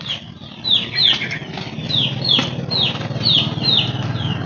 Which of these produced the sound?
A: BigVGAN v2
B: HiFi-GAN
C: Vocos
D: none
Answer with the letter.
D